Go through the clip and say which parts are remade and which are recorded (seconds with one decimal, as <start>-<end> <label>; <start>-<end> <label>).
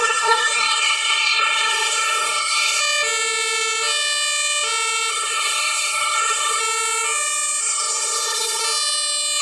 0.0-2.8 remade; 2.8-5.1 recorded; 5.1-6.6 remade; 6.6-7.6 recorded; 7.6-8.6 remade; 8.6-9.4 recorded